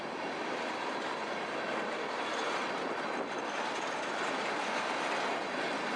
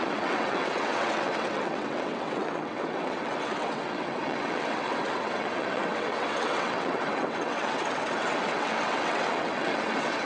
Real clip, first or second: first